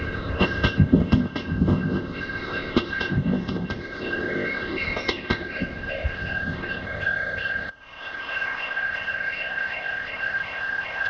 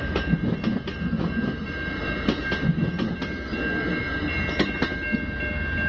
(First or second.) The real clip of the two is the second